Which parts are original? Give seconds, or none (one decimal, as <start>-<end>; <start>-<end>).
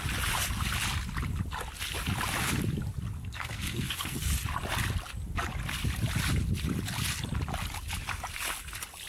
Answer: 0.0-3.2; 4.3-9.1